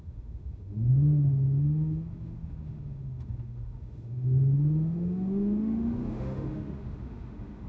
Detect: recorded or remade remade